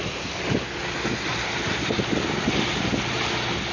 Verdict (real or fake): real